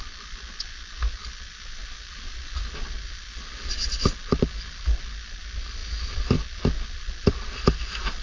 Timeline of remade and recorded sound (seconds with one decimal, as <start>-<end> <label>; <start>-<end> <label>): 0.0-8.2 recorded